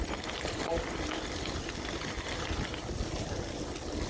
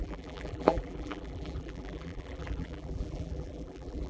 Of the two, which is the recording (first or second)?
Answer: first